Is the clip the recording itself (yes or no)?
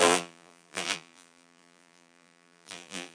no